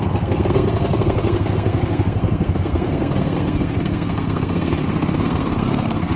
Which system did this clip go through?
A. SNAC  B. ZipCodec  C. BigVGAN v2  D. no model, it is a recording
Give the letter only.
A